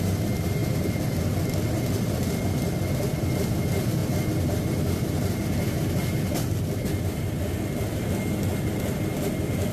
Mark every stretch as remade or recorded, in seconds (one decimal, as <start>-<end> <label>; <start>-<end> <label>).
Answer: 0.0-9.7 recorded